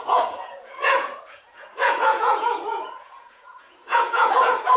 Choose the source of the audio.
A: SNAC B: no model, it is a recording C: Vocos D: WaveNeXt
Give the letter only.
C